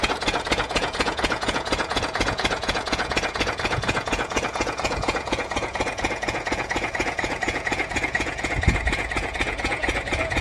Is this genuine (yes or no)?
no